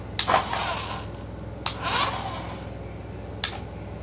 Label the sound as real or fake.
real